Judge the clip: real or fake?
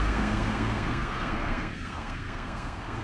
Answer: fake